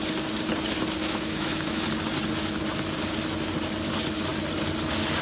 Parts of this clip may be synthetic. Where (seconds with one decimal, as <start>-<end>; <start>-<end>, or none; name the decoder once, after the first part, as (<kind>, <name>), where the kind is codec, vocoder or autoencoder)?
1.0-1.8 (autoencoder, DAC-VAE)